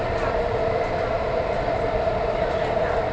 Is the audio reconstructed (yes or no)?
no